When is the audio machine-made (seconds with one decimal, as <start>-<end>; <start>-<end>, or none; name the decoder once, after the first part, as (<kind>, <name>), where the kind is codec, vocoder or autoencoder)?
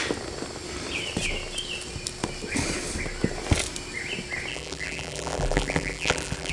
4.5-6.5 (vocoder, BigVGAN v2)